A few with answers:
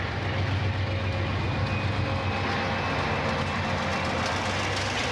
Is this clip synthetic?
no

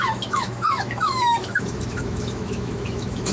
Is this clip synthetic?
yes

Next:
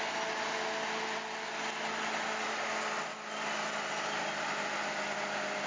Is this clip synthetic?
no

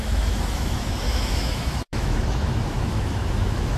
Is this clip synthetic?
yes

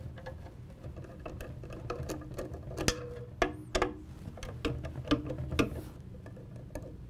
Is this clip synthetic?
no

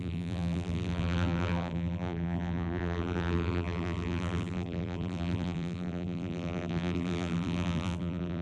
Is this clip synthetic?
yes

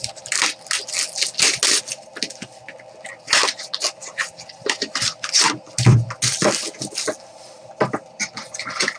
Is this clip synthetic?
no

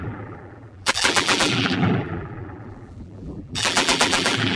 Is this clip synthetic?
yes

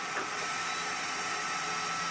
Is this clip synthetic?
yes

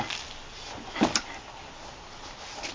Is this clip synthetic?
no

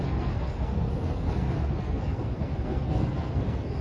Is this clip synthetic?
yes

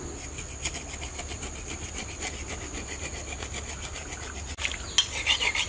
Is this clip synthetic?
no